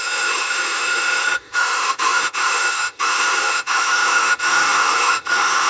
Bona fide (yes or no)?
no